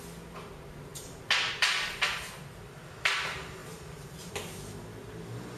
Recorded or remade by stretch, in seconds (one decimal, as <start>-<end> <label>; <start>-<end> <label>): 0.0-5.6 recorded